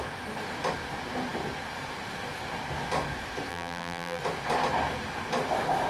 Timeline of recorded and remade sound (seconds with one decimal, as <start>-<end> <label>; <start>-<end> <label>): 0.0-3.5 recorded; 3.5-4.2 remade; 4.2-5.9 recorded